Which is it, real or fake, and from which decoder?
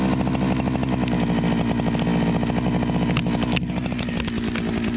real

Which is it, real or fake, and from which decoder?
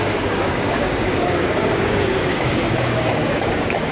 fake, codec, DAC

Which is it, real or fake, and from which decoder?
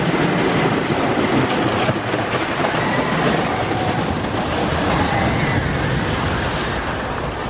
real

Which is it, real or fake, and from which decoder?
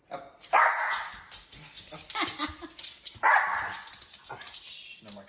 real